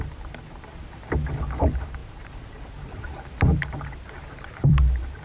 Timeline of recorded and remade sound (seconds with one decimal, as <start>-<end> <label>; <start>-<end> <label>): 0.0-0.7 remade; 0.7-1.6 recorded; 1.6-5.2 remade